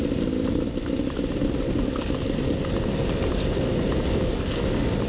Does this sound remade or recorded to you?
recorded